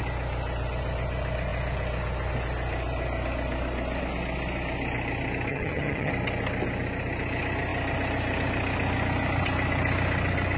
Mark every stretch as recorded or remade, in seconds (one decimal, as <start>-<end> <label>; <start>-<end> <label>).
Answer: 0.0-5.5 recorded; 5.5-6.1 remade; 6.1-10.6 recorded